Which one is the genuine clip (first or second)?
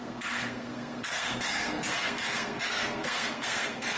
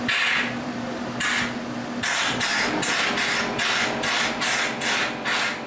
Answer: second